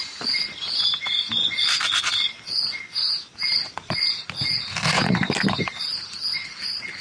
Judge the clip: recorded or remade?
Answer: recorded